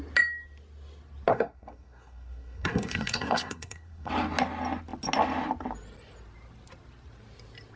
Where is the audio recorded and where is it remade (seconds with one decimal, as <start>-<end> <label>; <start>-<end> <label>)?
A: 0.0-1.3 recorded; 1.3-4.1 remade; 4.1-7.8 recorded